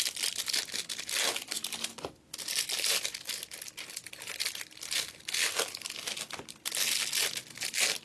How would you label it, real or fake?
real